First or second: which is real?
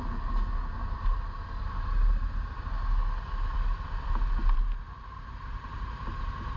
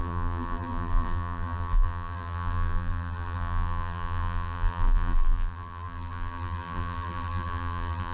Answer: first